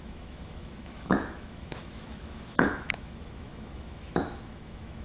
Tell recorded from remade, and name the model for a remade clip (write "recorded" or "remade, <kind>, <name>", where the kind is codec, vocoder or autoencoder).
remade, autoencoder, DAC-VAE